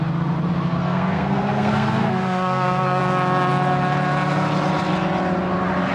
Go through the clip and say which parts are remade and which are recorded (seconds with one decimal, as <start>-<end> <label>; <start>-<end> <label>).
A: 0.0-0.8 recorded; 0.8-3.0 remade; 3.0-5.9 recorded